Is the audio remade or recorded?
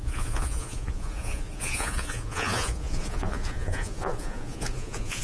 remade